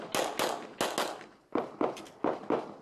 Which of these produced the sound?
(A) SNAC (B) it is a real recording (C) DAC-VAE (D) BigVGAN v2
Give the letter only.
B